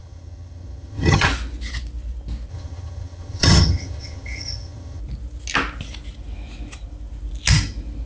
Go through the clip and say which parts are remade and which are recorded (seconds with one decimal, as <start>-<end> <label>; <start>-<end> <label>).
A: 0.0-1.3 remade; 1.3-2.5 recorded; 2.5-5.0 remade; 5.0-8.1 recorded